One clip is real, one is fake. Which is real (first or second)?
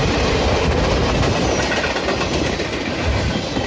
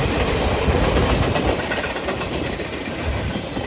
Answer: first